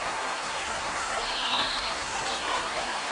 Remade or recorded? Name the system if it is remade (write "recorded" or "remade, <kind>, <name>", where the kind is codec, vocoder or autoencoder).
remade, codec, SNAC